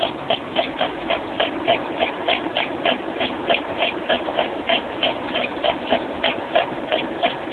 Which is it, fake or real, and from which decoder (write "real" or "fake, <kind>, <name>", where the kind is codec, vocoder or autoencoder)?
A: real